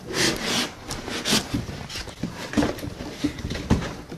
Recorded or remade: recorded